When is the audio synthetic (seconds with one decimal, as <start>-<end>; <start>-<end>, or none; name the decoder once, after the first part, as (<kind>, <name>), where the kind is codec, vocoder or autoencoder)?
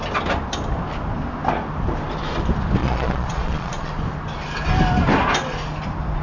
2.8-3.9 (vocoder, Vocos)